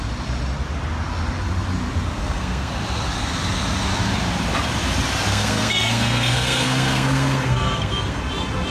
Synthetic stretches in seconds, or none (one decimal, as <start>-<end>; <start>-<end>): 2.2-2.7; 5.3-8.2